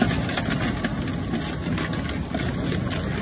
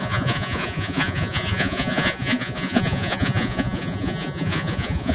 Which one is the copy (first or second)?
second